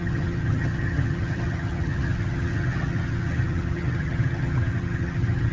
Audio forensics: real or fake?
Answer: fake